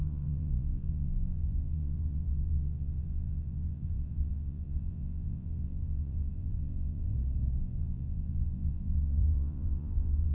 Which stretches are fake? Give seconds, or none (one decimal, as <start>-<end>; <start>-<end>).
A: 0.0-7.1; 7.6-10.3